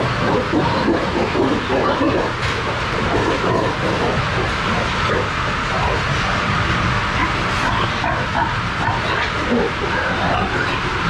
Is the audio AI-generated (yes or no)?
no